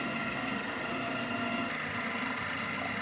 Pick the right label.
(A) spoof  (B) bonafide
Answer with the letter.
A